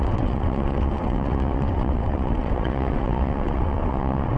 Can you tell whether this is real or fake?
fake